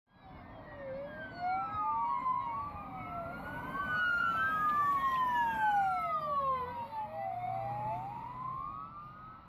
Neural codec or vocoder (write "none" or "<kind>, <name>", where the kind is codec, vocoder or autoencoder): none